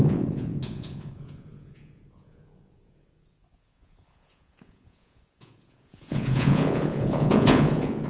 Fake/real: fake